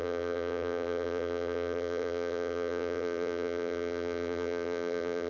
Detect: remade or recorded remade